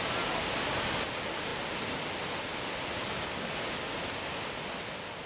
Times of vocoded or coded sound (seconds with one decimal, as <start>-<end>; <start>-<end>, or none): none